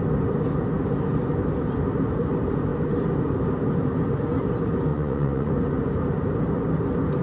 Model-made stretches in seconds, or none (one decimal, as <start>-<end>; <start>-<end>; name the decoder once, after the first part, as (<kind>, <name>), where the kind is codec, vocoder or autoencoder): 4.9-5.5 (vocoder, Vocos)

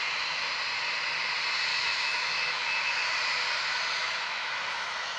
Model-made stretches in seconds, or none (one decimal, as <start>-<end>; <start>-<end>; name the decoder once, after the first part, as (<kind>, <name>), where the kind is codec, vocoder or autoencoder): 1.7-2.9 (autoencoder, DAC-VAE); 4.0-5.2

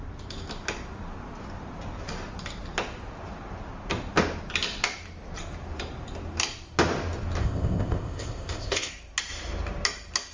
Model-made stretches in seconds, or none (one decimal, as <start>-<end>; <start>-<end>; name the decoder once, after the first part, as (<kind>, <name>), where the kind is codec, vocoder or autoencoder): 7.4-8.9 (codec, ZipCodec)

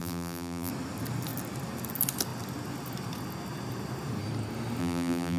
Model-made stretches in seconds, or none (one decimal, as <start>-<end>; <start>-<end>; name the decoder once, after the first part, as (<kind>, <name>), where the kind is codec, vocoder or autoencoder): 0.0-0.7 (vocoder, BigVGAN v2); 4.8-5.4

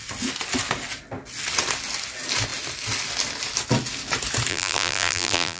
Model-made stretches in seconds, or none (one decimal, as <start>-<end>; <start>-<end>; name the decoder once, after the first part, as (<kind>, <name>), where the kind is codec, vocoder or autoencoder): 4.5-5.6 (vocoder, BigVGAN v2)

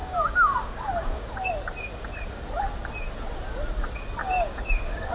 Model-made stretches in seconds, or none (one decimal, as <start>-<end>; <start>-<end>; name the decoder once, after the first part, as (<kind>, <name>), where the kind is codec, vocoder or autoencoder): 0.0-1.5 (codec, DAC); 4.2-5.1